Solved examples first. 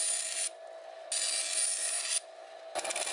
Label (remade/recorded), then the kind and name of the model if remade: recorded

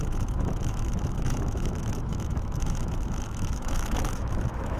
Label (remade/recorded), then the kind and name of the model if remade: remade, autoencoder, DAC-VAE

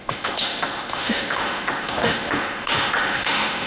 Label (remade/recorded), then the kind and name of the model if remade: remade, autoencoder, DAC-VAE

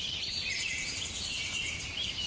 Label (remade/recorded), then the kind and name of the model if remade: recorded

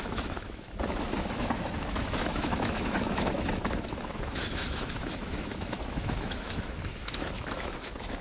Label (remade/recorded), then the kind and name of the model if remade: remade, autoencoder, DAC-VAE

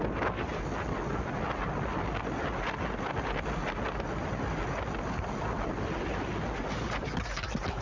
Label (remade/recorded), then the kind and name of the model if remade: recorded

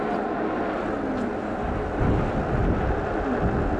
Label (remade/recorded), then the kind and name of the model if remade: recorded